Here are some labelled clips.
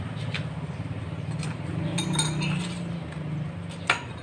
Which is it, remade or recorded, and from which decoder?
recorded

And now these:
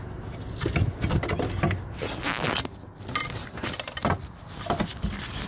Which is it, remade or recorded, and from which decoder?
recorded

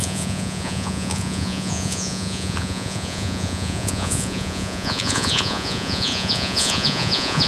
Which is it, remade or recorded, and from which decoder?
remade, vocoder, Vocos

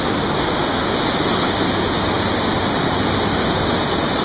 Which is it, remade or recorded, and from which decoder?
recorded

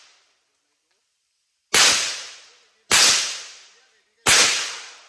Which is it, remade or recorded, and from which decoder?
recorded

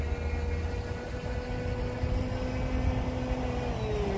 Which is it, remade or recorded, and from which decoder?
recorded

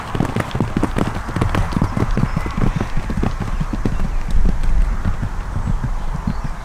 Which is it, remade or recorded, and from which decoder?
recorded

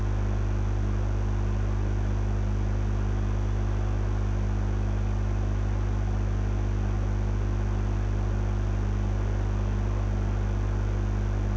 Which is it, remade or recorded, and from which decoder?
recorded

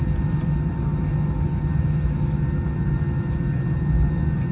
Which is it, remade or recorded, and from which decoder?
recorded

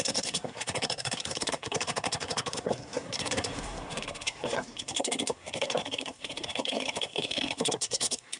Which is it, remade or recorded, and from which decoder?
remade, codec, SNAC